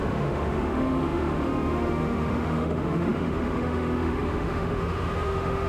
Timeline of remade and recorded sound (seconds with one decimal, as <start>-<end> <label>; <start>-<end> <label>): 0.0-5.7 remade